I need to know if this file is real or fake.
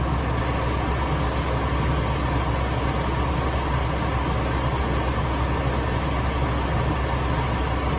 real